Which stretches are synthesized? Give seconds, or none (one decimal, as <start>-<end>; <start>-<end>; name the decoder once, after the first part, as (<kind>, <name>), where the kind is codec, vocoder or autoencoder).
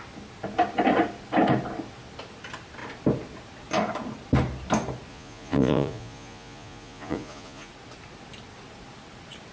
5.1-7.7 (vocoder, Vocos)